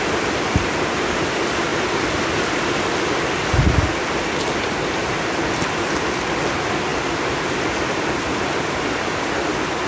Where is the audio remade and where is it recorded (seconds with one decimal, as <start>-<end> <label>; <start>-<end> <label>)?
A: 0.0-9.9 recorded